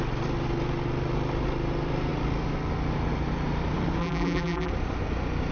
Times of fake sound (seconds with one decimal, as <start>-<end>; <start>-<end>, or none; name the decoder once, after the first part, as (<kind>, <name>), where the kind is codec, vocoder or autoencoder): 4.0-4.7 (vocoder, BigVGAN v2)